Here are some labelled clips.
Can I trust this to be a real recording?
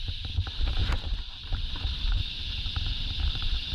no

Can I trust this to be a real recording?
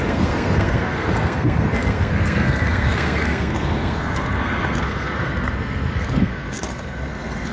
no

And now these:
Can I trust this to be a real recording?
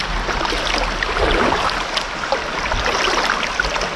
yes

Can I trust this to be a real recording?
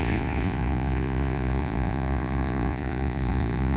no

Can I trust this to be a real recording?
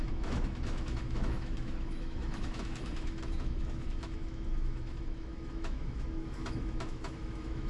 no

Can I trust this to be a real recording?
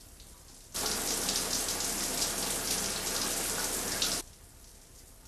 yes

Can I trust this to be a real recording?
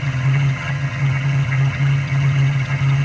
no